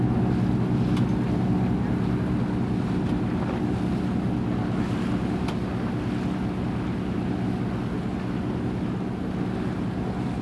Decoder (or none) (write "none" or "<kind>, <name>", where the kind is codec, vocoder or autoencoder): none